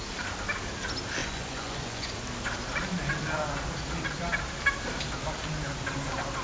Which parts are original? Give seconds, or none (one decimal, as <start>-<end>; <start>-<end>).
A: 0.0-1.2; 2.1-6.4